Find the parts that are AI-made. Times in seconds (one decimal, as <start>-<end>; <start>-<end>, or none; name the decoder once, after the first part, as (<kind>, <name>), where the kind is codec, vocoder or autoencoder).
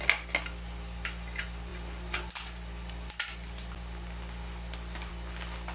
none